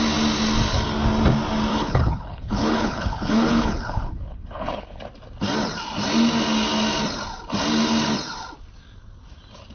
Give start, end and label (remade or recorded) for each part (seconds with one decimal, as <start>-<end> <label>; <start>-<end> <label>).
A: 0.0-1.7 recorded; 1.7-5.0 remade; 5.0-9.7 recorded